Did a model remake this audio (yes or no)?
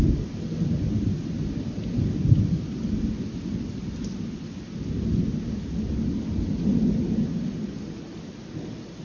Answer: no